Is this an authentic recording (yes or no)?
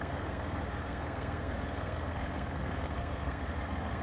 no